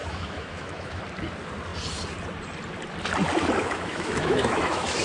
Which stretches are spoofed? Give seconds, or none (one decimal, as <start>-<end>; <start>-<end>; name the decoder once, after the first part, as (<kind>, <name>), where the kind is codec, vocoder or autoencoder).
0.0-1.0 (autoencoder, DAC-VAE); 3.6-5.0